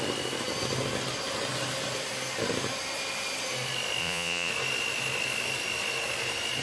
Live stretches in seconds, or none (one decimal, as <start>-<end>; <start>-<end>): 0.0-4.0; 4.5-6.6